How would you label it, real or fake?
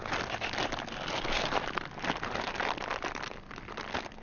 real